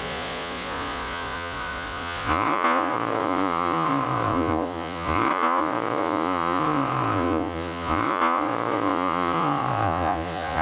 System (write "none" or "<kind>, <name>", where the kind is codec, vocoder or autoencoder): vocoder, Vocos